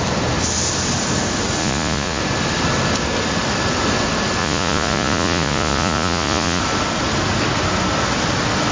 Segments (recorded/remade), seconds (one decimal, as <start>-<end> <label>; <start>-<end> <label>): 0.0-1.6 recorded; 1.6-2.2 remade; 2.2-4.4 recorded; 4.4-6.6 remade; 6.6-8.7 recorded

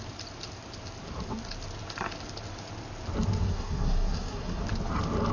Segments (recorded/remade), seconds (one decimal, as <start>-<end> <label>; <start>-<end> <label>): 0.0-3.4 recorded; 3.4-4.6 remade; 4.6-5.3 recorded

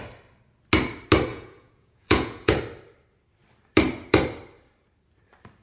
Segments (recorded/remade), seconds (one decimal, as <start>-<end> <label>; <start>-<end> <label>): 0.0-1.3 recorded; 1.3-2.5 remade; 2.5-5.6 recorded

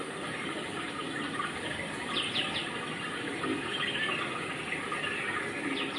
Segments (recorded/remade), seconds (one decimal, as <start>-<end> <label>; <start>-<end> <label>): 0.0-1.4 remade; 1.4-6.0 recorded

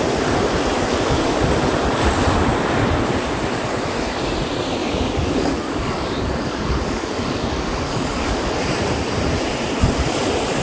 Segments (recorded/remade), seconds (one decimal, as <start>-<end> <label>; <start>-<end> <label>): 0.0-0.9 recorded; 0.9-1.4 remade; 1.4-4.8 recorded; 4.8-8.5 remade; 8.5-10.6 recorded

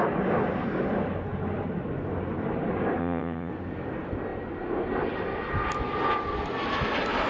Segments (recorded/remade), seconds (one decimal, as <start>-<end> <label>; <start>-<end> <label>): 0.0-3.0 recorded; 3.0-3.5 remade; 3.5-7.3 recorded

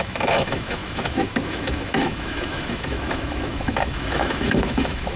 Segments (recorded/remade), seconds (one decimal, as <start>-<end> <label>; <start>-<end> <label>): 0.0-5.2 remade